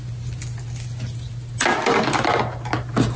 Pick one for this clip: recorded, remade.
recorded